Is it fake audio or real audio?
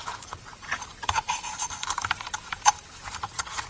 fake